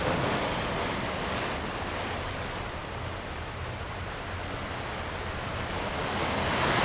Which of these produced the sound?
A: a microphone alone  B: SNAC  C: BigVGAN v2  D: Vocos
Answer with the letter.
A